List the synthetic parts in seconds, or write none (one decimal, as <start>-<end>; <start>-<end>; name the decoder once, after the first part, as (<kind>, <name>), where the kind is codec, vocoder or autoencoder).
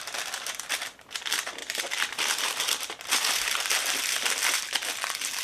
1.6-4.3 (vocoder, BigVGAN v2)